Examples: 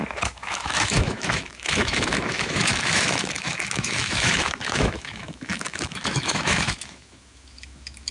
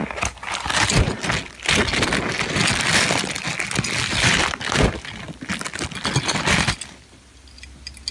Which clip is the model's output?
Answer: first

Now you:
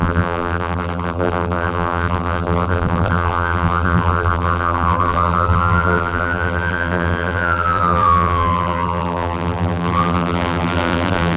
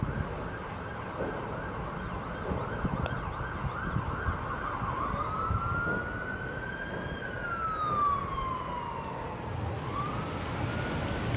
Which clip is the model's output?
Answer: first